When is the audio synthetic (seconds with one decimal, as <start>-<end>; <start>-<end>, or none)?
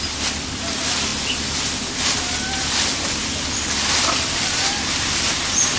none